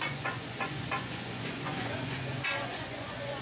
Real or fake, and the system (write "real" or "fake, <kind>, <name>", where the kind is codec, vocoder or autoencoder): fake, vocoder, Vocos